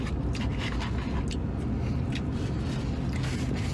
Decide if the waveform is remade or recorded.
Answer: recorded